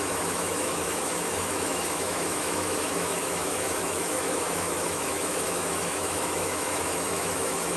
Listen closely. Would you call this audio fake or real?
fake